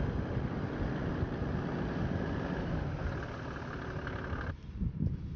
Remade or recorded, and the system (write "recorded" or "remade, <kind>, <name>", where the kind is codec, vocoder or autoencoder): recorded